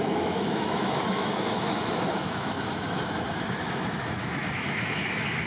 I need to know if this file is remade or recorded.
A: remade